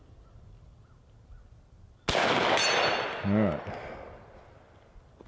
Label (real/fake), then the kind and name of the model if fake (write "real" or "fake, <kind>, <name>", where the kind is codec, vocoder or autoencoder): real